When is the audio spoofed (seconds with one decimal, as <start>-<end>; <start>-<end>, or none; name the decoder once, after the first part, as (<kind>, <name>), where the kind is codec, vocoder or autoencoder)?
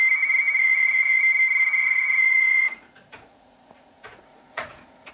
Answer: 0.6-1.2 (vocoder, Vocos); 1.8-5.1